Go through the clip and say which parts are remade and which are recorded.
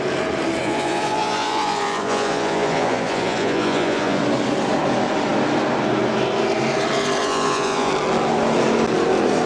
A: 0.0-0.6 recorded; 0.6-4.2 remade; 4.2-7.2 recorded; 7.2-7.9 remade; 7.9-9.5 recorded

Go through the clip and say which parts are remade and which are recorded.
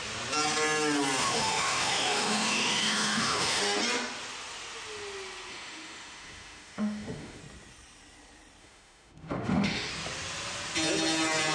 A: 0.0-1.2 recorded; 1.2-3.6 remade; 3.6-5.5 recorded; 5.5-7.4 remade; 7.4-8.6 recorded; 8.6-9.9 remade; 9.9-11.5 recorded